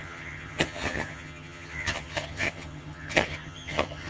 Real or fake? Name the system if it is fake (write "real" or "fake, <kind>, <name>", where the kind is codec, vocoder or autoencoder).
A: fake, vocoder, HiFi-GAN